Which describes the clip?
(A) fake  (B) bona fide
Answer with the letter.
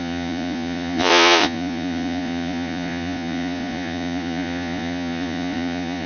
A